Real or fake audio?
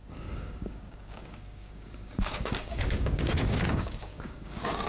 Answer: fake